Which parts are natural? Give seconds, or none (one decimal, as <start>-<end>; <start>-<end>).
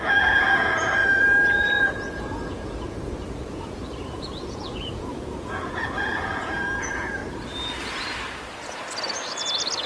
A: 7.2-9.9